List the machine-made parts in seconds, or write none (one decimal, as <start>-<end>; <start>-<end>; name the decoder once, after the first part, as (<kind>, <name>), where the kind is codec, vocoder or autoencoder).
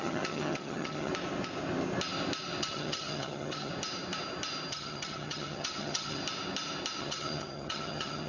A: 0.0-1.1 (vocoder, HiFi-GAN); 2.6-3.7; 4.7-6.2; 7.0-8.3